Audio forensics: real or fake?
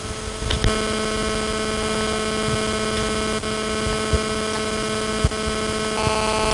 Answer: real